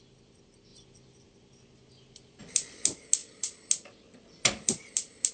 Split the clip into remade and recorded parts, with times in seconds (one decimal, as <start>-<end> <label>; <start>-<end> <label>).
0.0-5.3 recorded